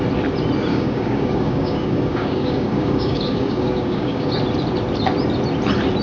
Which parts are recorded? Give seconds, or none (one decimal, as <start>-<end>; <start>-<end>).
0.0-0.7; 4.3-6.0